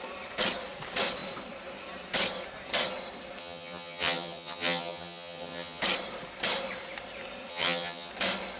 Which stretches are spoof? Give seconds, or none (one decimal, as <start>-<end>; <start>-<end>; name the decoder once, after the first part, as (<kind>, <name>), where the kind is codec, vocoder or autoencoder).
3.4-5.8 (vocoder, HiFi-GAN); 7.5-8.1